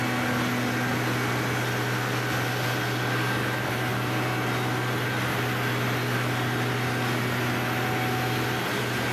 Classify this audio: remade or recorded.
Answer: recorded